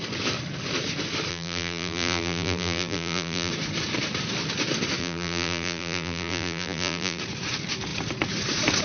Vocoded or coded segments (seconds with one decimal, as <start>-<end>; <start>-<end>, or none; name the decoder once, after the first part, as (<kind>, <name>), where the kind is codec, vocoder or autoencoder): 1.3-3.5 (vocoder, BigVGAN v2); 5.0-7.2